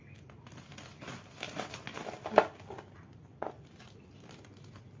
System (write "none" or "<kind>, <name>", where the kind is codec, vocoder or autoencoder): none